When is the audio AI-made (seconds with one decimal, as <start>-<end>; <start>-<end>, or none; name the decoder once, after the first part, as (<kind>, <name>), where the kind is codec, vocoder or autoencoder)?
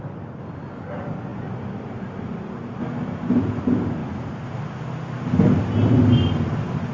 none